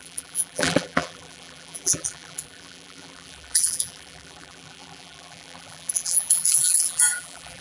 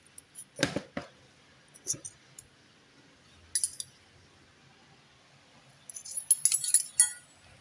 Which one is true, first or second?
second